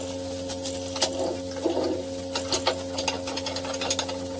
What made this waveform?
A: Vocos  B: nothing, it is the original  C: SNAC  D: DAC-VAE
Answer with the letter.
B